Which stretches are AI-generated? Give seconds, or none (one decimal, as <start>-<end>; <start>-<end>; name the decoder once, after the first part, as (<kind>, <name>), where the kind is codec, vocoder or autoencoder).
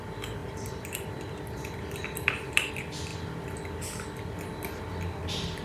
0.4-2.7 (vocoder, BigVGAN v2)